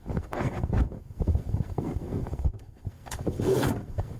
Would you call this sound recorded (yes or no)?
no